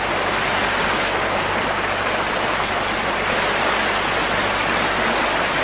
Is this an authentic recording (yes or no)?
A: yes